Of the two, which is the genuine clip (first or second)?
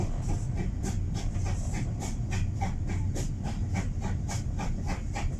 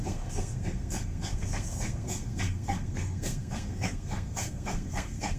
first